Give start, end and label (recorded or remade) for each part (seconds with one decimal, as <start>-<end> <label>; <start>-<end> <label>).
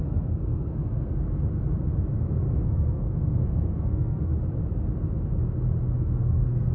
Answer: 0.0-1.1 remade; 1.1-1.8 recorded; 1.8-4.3 remade; 4.3-6.0 recorded; 6.0-6.7 remade